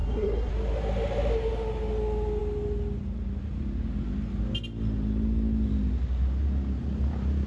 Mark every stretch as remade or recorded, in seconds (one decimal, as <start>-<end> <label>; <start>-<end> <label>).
0.0-0.5 remade; 0.5-7.5 recorded